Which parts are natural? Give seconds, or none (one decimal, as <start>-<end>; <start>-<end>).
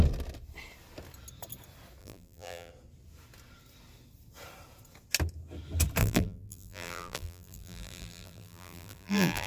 0.0-2.0; 2.7-6.0